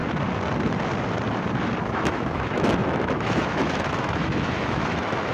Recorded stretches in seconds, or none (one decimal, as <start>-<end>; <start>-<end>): 0.0-1.9